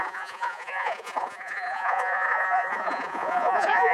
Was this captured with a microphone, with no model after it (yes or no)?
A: no